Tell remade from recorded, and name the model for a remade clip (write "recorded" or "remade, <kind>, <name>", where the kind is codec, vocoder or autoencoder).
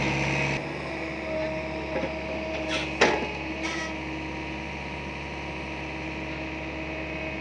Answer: recorded